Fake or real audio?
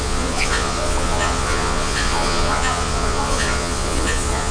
fake